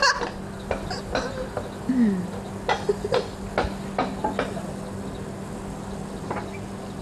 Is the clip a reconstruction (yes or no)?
no